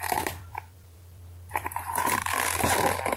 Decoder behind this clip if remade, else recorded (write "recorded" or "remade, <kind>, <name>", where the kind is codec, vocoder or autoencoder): remade, vocoder, BigVGAN v2